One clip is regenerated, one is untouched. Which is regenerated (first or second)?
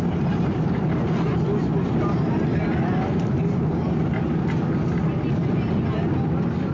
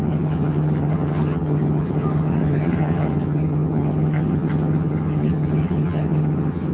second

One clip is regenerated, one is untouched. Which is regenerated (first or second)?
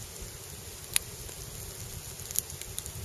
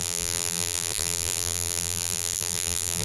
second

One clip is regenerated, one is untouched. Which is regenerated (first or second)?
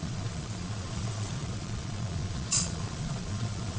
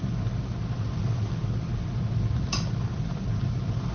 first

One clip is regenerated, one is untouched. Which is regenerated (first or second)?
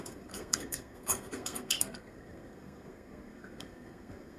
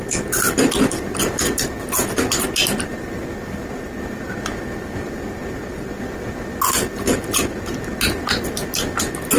first